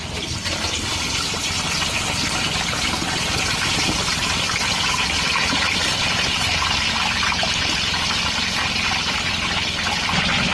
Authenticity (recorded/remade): remade